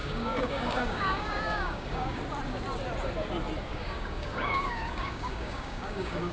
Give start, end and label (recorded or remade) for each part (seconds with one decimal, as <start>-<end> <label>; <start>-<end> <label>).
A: 0.0-2.2 remade; 2.2-3.7 recorded; 3.7-6.3 remade

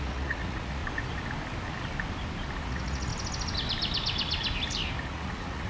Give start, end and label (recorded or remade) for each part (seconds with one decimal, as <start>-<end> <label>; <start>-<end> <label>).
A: 0.0-0.8 remade; 0.8-2.6 recorded; 2.6-3.1 remade; 3.1-5.1 recorded; 5.1-5.7 remade

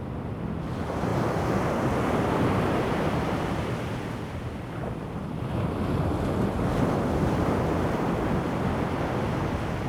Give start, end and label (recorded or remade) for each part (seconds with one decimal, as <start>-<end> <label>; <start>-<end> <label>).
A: 0.0-1.1 recorded; 1.1-3.7 remade; 3.7-9.9 recorded

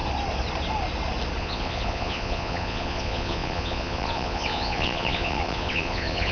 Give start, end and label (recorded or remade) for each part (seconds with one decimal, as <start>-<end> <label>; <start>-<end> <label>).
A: 0.0-1.4 recorded; 1.4-6.3 remade